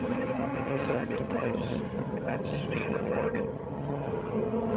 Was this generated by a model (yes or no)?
yes